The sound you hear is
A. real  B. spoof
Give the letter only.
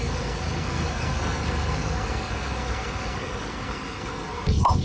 B